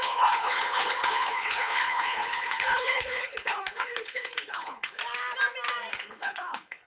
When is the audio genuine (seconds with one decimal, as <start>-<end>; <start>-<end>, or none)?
5.0-5.9